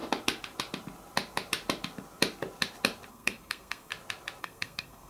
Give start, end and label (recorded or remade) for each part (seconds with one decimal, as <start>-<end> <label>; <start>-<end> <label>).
0.0-3.1 recorded; 3.1-3.9 remade; 3.9-4.4 recorded; 4.4-5.1 remade